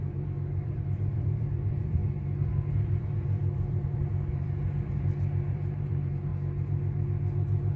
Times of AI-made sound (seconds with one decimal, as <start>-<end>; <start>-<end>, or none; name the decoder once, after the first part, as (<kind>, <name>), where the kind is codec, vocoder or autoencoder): 0.0-2.0 (vocoder, BigVGAN v2); 2.7-6.3